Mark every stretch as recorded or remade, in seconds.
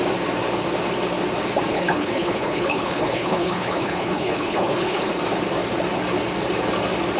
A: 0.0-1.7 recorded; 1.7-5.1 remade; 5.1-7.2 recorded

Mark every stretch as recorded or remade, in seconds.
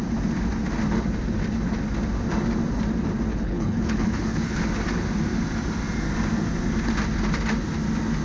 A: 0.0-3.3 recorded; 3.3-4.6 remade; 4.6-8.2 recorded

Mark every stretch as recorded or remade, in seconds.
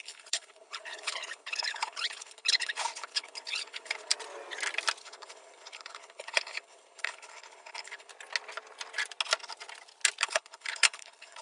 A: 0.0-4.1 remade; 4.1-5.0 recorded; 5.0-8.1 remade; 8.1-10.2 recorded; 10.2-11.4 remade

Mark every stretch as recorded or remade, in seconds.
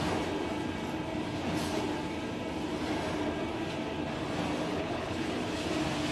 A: 0.0-4.7 recorded; 4.7-5.3 remade; 5.3-6.1 recorded